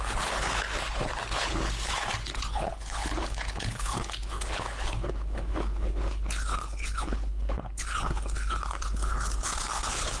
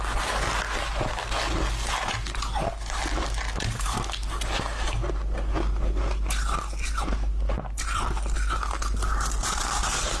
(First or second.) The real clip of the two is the second